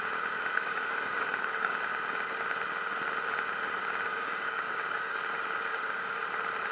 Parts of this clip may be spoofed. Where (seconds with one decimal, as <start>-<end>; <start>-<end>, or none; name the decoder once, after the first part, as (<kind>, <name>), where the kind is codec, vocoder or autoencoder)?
0.5-1.8 (codec, DAC); 4.1-5.2; 5.7-6.2